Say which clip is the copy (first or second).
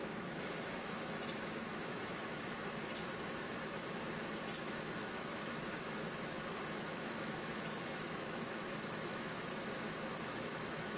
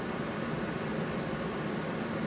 first